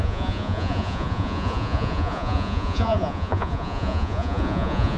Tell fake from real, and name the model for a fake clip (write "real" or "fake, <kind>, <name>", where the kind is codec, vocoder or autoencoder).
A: fake, vocoder, Vocos